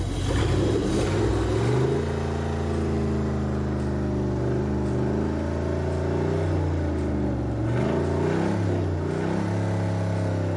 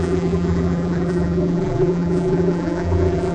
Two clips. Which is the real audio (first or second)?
first